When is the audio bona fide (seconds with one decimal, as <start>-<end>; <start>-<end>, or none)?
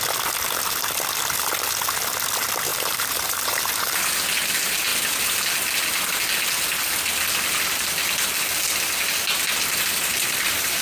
0.0-2.7; 4.1-10.0